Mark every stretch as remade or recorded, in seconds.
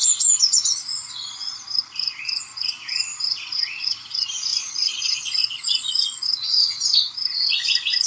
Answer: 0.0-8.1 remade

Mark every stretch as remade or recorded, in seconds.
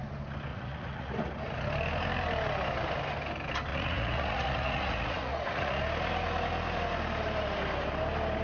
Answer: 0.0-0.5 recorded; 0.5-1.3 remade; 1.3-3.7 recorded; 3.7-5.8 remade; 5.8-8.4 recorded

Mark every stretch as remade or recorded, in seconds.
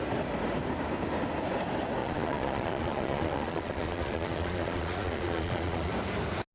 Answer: 0.0-2.0 recorded; 2.0-5.9 remade; 5.9-6.5 recorded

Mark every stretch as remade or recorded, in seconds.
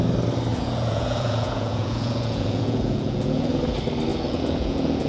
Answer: 0.0-0.5 recorded; 0.5-3.6 remade; 3.6-4.1 recorded; 4.1-5.1 remade